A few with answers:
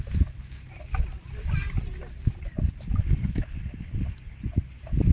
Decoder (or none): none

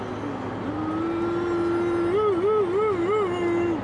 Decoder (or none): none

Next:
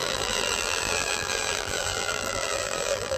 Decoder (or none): vocoder, BigVGAN v2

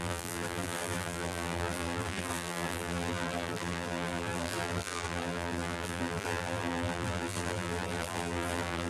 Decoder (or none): vocoder, BigVGAN v2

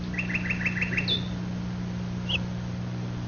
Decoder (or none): none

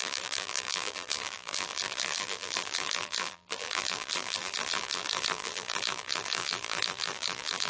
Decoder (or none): vocoder, BigVGAN v2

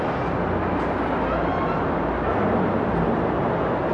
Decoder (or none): none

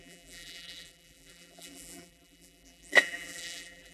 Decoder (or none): vocoder, BigVGAN v2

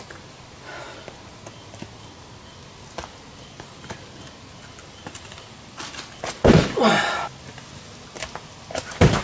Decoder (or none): none